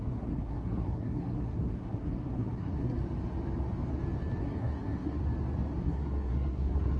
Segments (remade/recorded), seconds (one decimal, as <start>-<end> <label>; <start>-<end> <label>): 0.0-3.0 remade; 3.0-4.4 recorded; 4.4-5.2 remade; 5.2-5.8 recorded; 5.8-7.0 remade